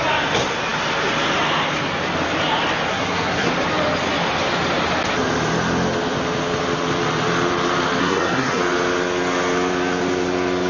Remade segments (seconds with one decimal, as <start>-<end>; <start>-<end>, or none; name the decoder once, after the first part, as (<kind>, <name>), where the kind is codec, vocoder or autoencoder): 2.9-3.5 (codec, SNAC); 8.0-8.6